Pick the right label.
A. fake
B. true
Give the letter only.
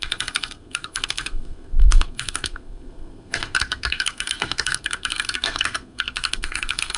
A